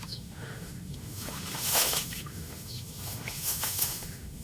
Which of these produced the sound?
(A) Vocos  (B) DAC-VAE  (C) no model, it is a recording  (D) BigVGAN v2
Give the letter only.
B